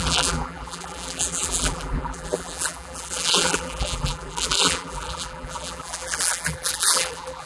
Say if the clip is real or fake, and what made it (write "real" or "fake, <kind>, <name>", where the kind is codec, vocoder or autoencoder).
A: fake, vocoder, BigVGAN v2